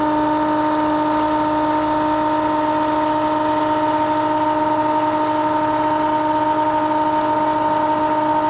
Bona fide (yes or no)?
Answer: yes